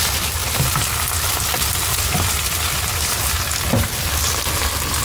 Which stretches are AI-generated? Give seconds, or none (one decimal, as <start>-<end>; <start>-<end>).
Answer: none